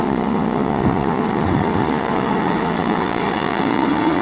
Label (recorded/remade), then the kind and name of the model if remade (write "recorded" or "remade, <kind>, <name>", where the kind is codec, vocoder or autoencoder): remade, vocoder, Vocos